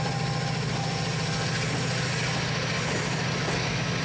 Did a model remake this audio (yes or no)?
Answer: no